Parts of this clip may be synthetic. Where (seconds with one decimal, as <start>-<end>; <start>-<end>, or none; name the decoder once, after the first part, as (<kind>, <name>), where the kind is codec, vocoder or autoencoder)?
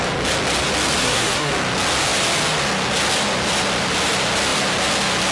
1.0-1.5 (codec, SNAC)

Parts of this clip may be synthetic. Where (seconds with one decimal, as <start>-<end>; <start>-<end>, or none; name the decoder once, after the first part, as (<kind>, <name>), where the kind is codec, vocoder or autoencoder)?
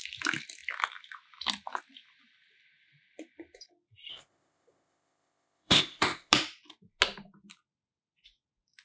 4.1-6.3 (codec, ZipCodec)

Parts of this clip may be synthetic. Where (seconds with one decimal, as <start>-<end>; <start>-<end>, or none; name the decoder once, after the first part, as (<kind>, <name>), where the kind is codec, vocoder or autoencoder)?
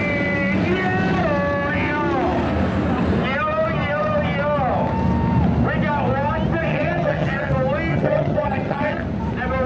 6.7-7.5 (vocoder, HiFi-GAN); 7.9-9.0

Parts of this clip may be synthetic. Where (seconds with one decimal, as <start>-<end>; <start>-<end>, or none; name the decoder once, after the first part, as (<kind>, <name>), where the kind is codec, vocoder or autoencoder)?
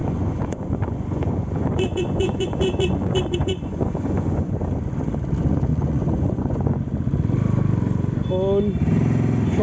0.0-4.5 (vocoder, Vocos); 5.7-6.8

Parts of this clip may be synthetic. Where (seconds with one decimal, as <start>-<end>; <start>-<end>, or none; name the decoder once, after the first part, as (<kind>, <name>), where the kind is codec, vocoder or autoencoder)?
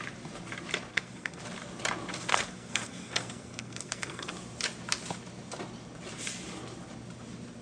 0.9-1.4 (codec, SNAC); 2.3-4.3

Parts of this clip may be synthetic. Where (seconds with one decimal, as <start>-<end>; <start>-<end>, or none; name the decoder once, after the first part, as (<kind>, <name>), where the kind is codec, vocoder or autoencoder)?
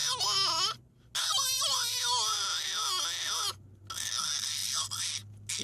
none